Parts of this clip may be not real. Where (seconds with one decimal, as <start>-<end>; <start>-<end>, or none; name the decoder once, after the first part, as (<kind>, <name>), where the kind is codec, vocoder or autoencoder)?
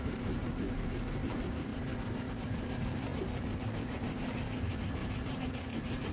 0.0-6.1 (vocoder, BigVGAN v2)